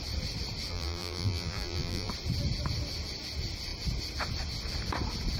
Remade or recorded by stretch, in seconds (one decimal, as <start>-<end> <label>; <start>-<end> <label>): 0.0-0.7 recorded; 0.7-2.1 remade; 2.1-5.4 recorded